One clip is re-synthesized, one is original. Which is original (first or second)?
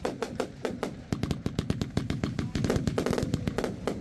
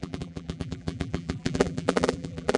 first